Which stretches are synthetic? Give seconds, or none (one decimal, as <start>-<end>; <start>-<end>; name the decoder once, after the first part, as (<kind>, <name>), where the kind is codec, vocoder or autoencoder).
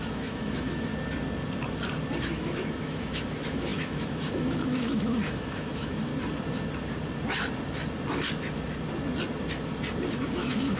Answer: 0.0-0.9 (autoencoder, DAC-VAE); 2.2-6.1; 10.1-10.8